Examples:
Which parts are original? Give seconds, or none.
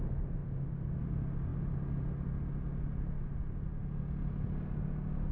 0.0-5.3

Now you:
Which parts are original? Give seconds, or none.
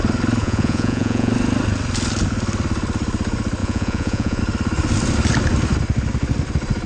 0.0-0.4; 1.3-3.6; 4.4-6.9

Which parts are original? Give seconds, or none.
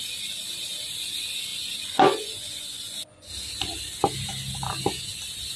0.0-1.5; 3.3-5.6